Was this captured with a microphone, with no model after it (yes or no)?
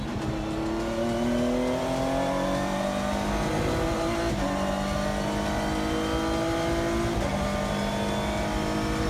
yes